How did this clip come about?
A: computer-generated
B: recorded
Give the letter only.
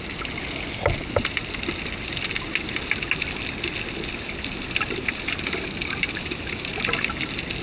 B